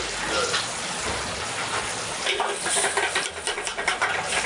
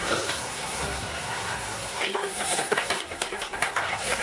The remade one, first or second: second